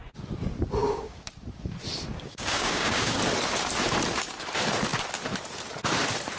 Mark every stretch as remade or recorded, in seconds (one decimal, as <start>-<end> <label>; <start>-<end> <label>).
0.0-0.8 recorded; 0.8-1.3 remade; 1.3-2.1 recorded; 2.1-3.2 remade; 3.2-6.4 recorded